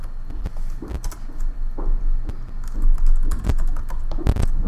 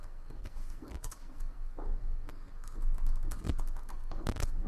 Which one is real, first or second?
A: first